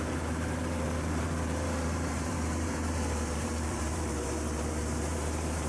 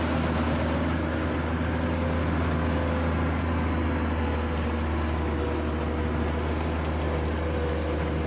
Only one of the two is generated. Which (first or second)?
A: first